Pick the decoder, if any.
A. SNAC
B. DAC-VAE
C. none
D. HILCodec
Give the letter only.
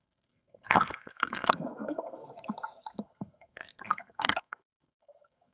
A